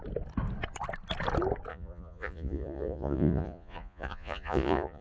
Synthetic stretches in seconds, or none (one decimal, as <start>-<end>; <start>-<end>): 1.7-5.0